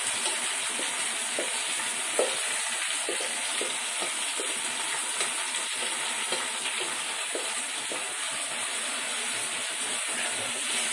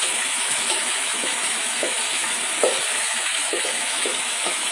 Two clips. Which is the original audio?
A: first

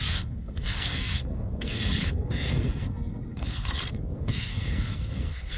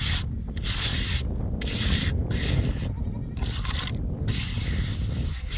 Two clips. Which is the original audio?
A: second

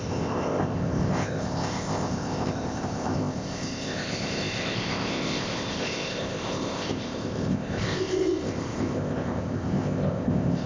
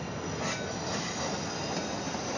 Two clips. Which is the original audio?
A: second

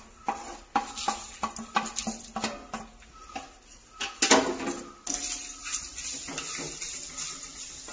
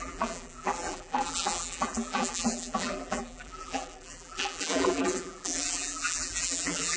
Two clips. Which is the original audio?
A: first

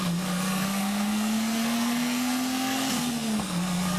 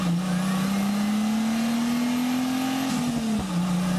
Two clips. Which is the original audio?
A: second